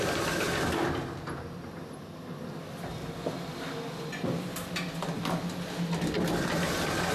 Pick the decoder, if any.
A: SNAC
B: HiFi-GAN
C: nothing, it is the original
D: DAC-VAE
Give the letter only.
C